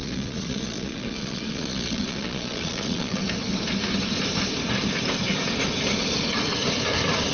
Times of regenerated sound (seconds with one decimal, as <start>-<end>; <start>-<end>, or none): 0.0-3.2